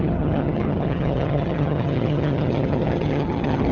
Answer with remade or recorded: remade